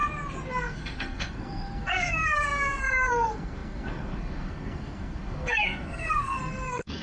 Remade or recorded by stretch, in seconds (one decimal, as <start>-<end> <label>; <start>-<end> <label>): 0.0-0.5 recorded; 0.5-7.0 remade